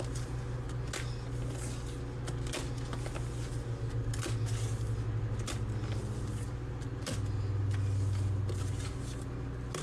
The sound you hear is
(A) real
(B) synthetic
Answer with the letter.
A